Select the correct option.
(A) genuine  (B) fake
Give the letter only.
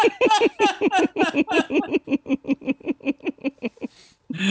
A